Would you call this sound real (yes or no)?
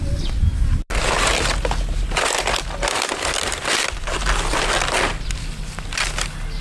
yes